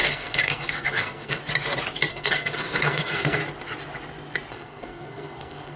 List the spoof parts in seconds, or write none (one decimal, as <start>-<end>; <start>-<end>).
0.0-1.4; 2.1-3.4; 4.5-5.8